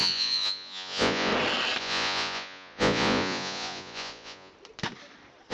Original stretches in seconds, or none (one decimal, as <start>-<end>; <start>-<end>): 1.3-1.8; 4.5-5.5